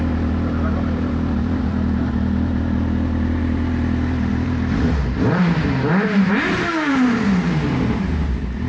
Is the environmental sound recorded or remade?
remade